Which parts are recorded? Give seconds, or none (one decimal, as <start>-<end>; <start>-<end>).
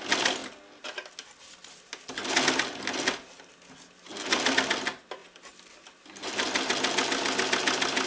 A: 0.0-8.1